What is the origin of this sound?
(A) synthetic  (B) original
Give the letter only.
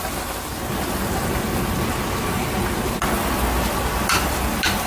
B